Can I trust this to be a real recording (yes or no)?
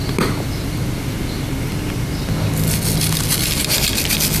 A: yes